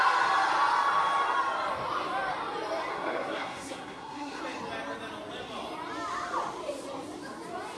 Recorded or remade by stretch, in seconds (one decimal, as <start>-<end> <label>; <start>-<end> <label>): 0.0-2.9 recorded; 2.9-4.4 remade; 4.4-7.8 recorded